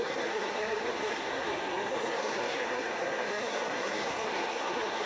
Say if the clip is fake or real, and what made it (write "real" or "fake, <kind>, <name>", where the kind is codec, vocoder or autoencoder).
fake, codec, SNAC